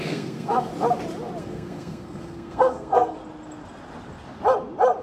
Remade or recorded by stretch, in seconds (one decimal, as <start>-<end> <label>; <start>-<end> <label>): 0.0-0.7 remade; 0.7-1.4 recorded; 1.4-3.2 remade; 3.2-5.0 recorded